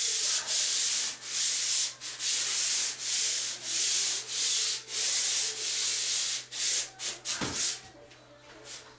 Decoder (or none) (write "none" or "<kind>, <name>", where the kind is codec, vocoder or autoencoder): none